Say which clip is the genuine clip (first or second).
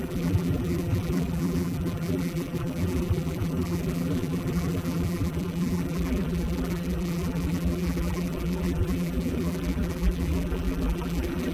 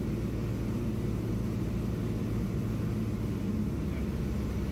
second